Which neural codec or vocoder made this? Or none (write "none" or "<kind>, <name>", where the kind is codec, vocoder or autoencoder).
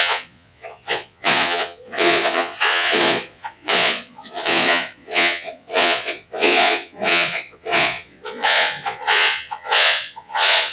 vocoder, Vocos